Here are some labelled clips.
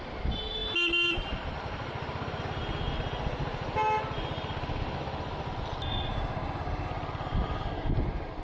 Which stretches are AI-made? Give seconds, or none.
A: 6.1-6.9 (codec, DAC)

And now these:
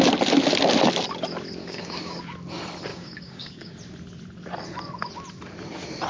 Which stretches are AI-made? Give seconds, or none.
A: 1.6-2.2 (codec, DAC); 2.9-3.7

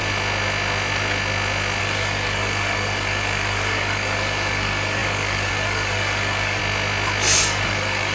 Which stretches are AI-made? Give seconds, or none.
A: 1.8-6.6 (codec, DAC); 7.4-8.1

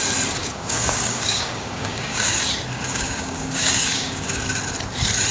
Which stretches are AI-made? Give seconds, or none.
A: 0.4-2.4 (codec, DAC); 2.8-4.4

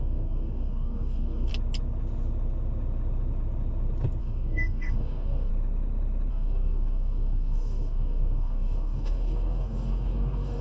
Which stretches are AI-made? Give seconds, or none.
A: 0.0-1.5 (codec, DAC); 4.2-5.5; 6.3-10.6